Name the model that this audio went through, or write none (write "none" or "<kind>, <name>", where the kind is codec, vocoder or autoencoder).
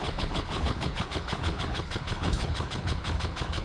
codec, HILCodec